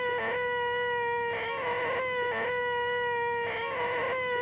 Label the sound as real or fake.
real